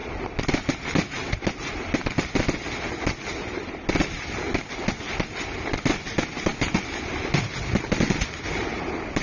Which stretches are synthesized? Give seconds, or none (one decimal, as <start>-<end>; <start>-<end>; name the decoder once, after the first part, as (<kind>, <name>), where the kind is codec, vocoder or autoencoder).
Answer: none